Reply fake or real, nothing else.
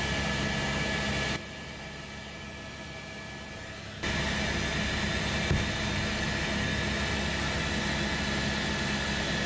real